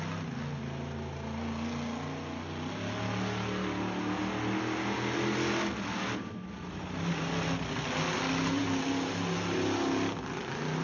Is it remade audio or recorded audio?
recorded